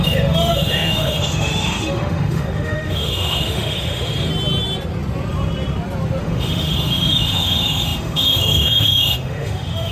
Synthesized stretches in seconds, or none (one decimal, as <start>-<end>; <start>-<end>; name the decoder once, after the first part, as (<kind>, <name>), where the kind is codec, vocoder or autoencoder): 0.0-4.3 (autoencoder, DAC-VAE); 6.2-9.9